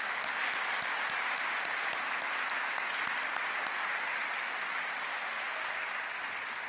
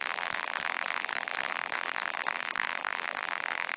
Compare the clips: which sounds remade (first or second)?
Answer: second